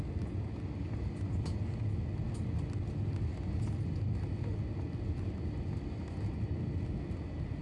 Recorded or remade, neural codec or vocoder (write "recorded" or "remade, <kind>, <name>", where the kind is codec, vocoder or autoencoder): recorded